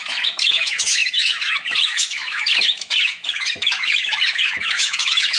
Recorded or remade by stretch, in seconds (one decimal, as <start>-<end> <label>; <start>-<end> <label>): 0.0-5.4 remade